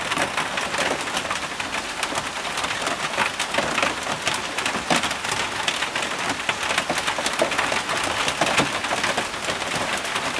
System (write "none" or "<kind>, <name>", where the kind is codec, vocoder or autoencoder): none